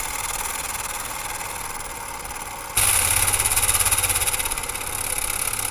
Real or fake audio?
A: real